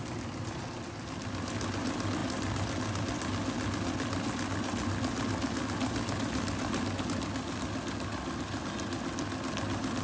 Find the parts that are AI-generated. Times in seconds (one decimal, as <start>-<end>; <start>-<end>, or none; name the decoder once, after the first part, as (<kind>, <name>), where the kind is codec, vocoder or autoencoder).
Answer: none